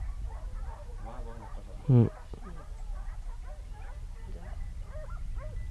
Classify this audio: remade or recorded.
recorded